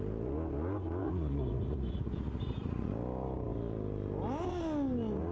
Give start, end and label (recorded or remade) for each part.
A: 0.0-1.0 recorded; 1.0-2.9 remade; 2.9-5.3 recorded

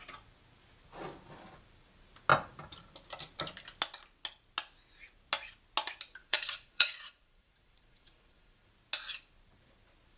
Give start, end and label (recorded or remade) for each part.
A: 0.0-6.2 recorded; 6.2-8.7 remade; 8.7-10.2 recorded

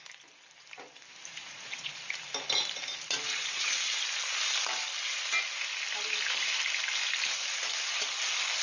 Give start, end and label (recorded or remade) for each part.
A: 0.0-1.4 recorded; 1.4-2.0 remade; 2.0-8.6 recorded